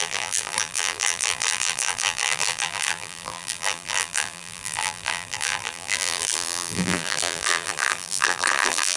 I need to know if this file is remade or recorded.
remade